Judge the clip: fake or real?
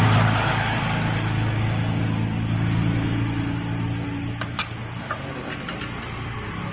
real